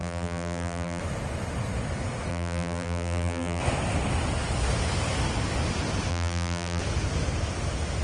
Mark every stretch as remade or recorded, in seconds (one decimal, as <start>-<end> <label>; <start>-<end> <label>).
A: 0.0-1.0 remade; 1.0-2.3 recorded; 2.3-3.6 remade; 3.6-6.1 recorded; 6.1-6.8 remade; 6.8-8.0 recorded